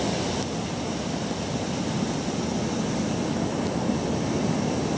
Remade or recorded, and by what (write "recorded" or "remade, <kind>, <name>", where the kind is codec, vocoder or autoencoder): recorded